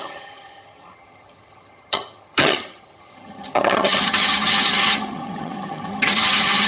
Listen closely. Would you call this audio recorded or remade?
remade